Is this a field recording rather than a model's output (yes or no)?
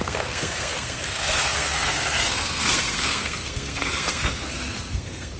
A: no